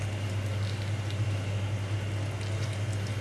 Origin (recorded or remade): recorded